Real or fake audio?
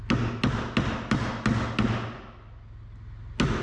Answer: real